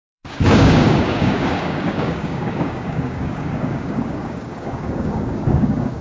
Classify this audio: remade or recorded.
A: remade